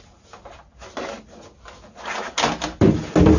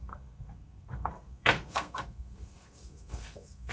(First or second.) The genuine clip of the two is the first